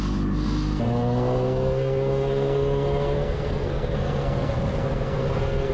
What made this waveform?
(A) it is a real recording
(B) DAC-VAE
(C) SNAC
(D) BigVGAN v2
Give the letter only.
C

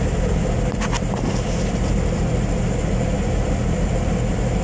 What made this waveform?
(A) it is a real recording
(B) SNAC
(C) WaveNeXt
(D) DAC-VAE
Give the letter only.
A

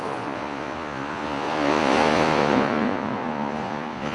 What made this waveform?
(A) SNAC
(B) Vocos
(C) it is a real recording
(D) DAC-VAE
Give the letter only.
B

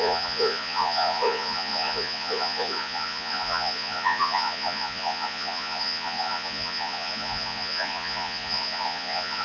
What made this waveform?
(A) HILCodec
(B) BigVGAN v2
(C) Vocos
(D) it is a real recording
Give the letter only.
C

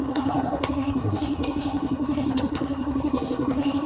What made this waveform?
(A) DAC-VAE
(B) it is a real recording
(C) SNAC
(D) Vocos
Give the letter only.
C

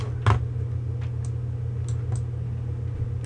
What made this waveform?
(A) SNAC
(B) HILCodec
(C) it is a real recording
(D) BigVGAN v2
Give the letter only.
C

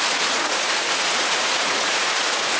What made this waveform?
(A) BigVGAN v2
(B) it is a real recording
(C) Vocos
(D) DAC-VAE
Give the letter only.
C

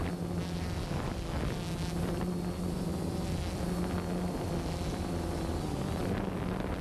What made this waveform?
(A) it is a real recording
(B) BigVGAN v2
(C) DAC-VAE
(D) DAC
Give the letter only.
A